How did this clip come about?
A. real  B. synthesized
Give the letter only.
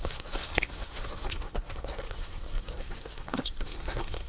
B